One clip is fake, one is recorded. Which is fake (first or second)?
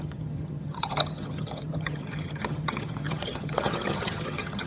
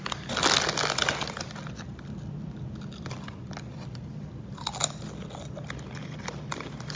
first